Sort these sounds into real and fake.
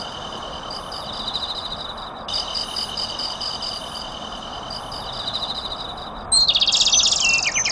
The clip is real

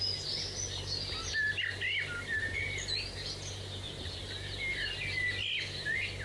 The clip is real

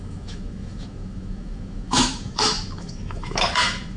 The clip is fake